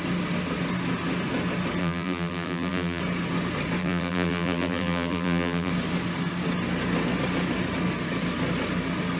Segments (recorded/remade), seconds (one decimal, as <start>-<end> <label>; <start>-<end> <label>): 0.0-1.8 recorded; 1.8-3.0 remade; 3.0-3.8 recorded; 3.8-5.7 remade; 5.7-9.2 recorded